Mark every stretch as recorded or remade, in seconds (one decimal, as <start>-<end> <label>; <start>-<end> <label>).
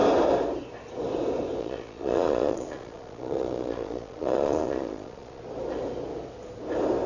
0.0-1.6 recorded; 1.6-5.4 remade; 5.4-7.1 recorded